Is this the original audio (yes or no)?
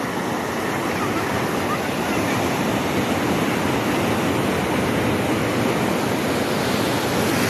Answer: yes